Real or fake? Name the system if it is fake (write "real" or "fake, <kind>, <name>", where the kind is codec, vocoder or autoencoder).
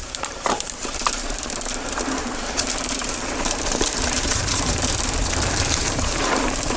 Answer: fake, vocoder, BigVGAN v2